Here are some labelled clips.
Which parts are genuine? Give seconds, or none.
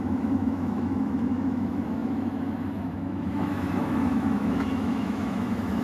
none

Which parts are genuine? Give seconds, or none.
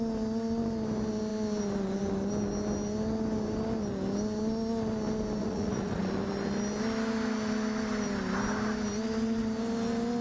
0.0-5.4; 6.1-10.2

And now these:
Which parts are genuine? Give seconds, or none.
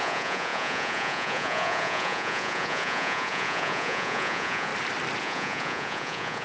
4.7-5.2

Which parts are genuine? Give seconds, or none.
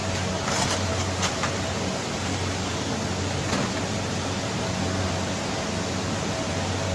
0.0-6.9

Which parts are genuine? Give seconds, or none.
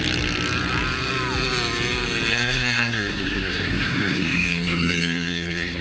0.0-2.3